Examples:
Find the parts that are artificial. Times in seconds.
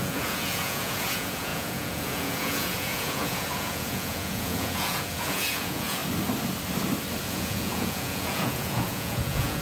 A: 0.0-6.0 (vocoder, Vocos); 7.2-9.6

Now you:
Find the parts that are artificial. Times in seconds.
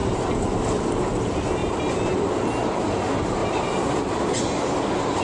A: 1.6-2.1 (vocoder, BigVGAN v2); 3.4-4.0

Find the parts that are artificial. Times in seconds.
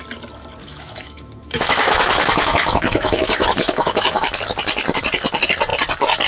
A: 0.6-4.4 (autoencoder, DAC-VAE)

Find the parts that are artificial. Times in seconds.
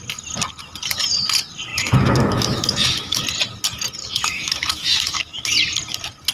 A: 1.7-3.2 (autoencoder, DAC-VAE); 4.0-5.4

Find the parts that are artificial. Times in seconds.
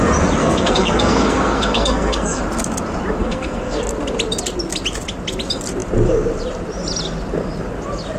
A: 0.4-2.4 (codec, SNAC); 3.2-3.8